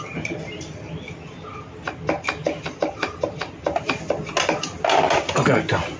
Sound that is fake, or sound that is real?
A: real